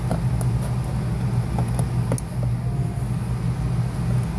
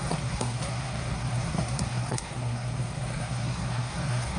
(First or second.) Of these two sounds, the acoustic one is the first